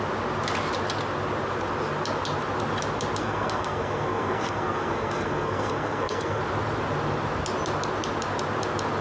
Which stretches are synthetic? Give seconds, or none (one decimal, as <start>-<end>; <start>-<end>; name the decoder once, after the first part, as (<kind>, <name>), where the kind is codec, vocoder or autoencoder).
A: 3.2-6.4 (codec, SNAC)

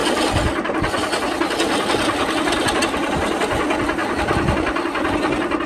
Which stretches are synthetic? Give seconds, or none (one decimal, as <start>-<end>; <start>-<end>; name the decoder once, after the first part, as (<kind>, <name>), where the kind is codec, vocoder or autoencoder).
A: none

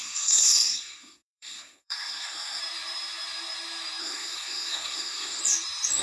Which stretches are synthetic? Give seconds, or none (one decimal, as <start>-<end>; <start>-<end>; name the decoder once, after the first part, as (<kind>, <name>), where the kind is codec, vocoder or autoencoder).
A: 0.0-2.6 (codec, SNAC); 4.0-5.4

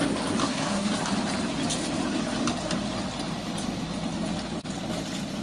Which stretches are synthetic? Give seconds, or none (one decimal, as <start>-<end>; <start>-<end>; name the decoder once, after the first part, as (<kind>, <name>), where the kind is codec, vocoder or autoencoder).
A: 0.4-0.9 (codec, SNAC)

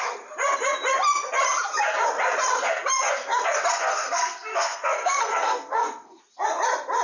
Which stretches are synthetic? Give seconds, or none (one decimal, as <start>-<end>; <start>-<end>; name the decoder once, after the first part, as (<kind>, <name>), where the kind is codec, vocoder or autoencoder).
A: 3.7-6.2 (codec, SNAC)

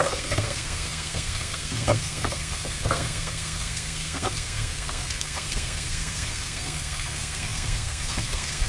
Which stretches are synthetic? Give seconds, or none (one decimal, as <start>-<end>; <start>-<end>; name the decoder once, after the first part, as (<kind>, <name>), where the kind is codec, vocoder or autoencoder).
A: 0.0-8.7 (codec, SNAC)

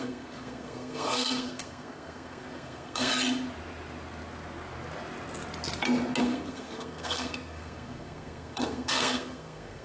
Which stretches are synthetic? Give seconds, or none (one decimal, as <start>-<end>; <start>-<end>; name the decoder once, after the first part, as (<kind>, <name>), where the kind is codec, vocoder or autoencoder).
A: 0.0-3.1 (codec, SNAC); 6.2-9.8

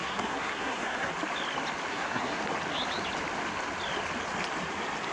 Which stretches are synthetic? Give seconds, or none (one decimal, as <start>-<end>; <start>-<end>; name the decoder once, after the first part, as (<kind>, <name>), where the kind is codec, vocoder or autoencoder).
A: 0.0-1.1 (codec, SNAC); 1.9-2.4